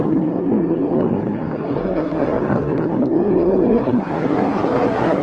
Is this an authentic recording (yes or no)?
no